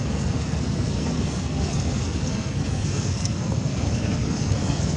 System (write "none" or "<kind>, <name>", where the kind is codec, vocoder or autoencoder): codec, SNAC